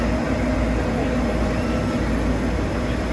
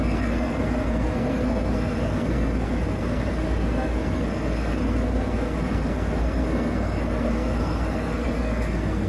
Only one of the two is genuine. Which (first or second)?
first